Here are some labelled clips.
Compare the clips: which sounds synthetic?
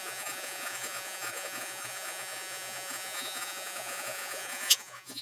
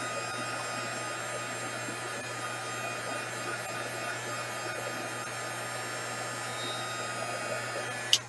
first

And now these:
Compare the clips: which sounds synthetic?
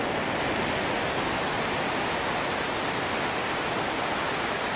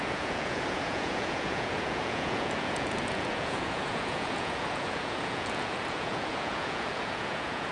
second